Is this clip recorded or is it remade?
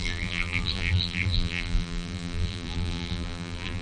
remade